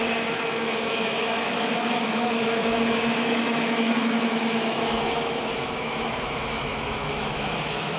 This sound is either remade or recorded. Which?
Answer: remade